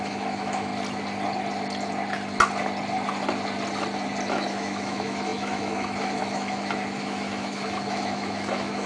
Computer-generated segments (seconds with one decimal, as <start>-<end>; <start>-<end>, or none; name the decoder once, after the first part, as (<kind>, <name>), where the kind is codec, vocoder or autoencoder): 0.0-0.7 (autoencoder, DAC-VAE); 4.3-8.9

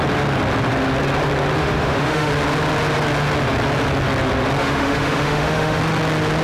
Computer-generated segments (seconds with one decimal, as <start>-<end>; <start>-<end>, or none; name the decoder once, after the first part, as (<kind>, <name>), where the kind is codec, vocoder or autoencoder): 1.6-2.3 (autoencoder, DAC-VAE); 4.6-5.8

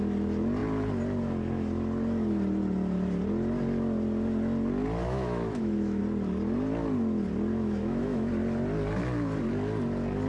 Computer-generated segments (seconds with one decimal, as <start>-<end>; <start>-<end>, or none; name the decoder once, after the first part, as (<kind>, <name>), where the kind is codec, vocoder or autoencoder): 5.0-6.0 (autoencoder, DAC-VAE); 7.5-8.3

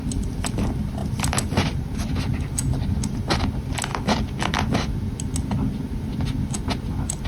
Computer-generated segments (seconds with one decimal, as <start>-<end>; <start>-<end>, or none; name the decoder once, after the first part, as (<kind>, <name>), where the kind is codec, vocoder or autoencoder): none

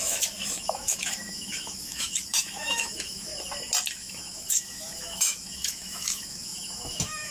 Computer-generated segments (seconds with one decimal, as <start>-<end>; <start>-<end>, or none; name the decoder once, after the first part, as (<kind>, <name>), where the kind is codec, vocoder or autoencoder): 0.0-3.3 (autoencoder, DAC-VAE); 3.9-7.3